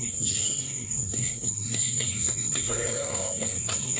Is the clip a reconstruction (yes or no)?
yes